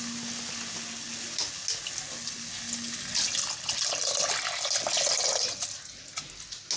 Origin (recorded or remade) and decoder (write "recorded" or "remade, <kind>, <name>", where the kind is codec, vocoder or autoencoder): recorded